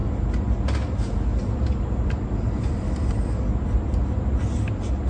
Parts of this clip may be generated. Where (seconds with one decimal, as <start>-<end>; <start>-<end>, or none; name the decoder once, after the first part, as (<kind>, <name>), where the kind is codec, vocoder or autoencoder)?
none